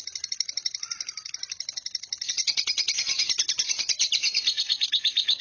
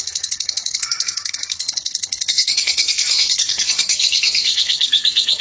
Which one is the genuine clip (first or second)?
first